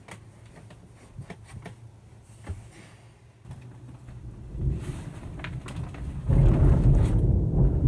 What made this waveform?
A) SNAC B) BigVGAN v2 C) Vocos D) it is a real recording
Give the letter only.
D